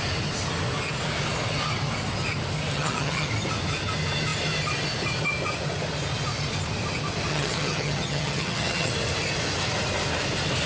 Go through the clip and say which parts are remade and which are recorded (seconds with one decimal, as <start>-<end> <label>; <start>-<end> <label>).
0.0-2.7 recorded; 2.7-3.3 remade; 3.3-7.3 recorded; 7.3-8.9 remade; 8.9-10.7 recorded

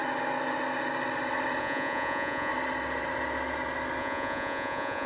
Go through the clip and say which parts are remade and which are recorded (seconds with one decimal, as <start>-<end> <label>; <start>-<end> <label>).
0.0-1.6 recorded; 1.6-2.5 remade; 2.5-4.0 recorded; 4.0-5.1 remade

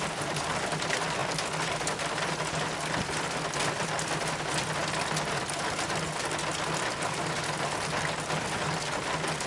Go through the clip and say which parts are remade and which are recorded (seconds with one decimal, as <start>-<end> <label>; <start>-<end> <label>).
0.0-9.5 recorded

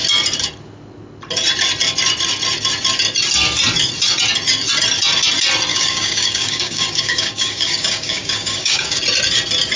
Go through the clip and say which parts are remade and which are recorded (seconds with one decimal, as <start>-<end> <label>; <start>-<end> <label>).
0.0-5.7 recorded; 5.7-9.0 remade; 9.0-9.8 recorded

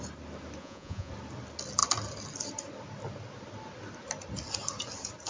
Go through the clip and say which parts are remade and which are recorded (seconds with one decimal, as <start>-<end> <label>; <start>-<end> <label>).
0.0-0.6 recorded; 0.6-1.1 remade; 1.1-5.3 recorded

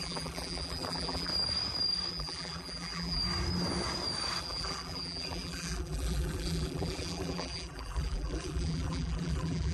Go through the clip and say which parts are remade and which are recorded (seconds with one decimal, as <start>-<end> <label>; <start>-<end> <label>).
0.0-1.3 remade; 1.3-2.1 recorded; 2.1-3.2 remade; 3.2-4.4 recorded; 4.4-9.7 remade

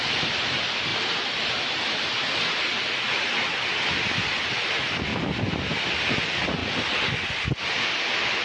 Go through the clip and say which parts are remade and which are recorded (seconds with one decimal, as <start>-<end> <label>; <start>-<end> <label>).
0.0-5.1 recorded; 5.1-6.0 remade; 6.0-8.4 recorded